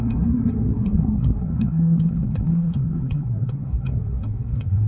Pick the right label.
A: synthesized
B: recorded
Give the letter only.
A